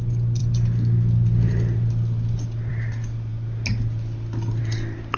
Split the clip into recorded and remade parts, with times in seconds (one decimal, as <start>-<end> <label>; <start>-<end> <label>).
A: 0.0-5.2 recorded